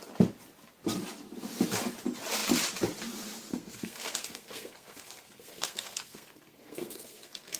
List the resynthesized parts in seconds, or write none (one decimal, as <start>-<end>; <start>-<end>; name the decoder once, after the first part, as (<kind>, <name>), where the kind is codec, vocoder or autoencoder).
3.5-7.6 (codec, SNAC)